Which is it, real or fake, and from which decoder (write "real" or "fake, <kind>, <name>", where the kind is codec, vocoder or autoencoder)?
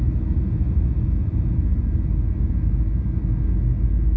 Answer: real